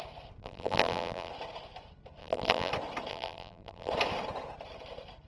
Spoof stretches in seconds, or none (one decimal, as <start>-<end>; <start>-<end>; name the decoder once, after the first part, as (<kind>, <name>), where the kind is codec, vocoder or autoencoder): 0.4-1.3 (vocoder, BigVGAN v2); 2.2-2.7; 3.1-3.9